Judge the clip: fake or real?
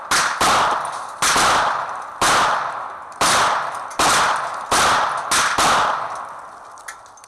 real